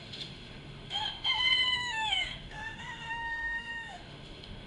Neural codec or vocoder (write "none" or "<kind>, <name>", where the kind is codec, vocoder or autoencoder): autoencoder, DAC-VAE